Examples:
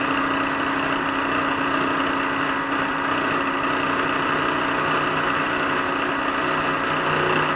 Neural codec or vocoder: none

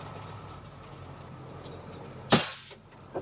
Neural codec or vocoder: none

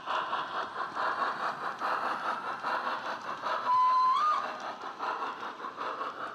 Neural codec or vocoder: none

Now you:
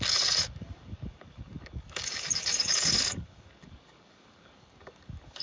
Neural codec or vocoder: codec, DAC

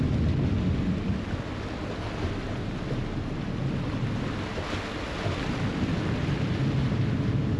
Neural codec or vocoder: none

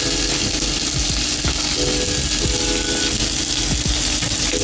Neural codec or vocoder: none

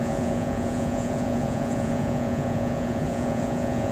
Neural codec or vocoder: vocoder, Vocos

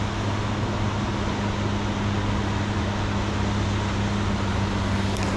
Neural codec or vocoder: none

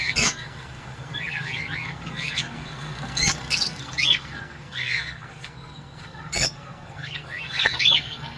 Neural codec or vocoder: codec, SNAC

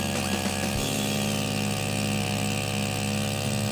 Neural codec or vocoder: none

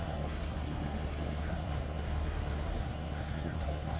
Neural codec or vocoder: codec, SNAC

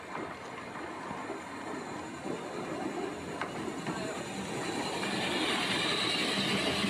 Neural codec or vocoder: none